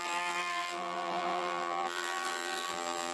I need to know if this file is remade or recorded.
remade